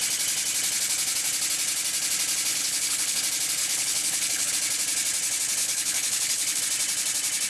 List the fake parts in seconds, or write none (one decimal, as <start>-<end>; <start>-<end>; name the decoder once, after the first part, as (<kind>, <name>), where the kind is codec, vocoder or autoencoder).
2.5-3.2 (codec, HILCodec); 3.6-4.5; 5.6-6.6